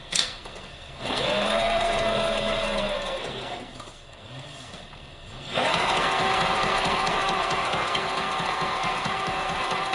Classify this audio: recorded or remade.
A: remade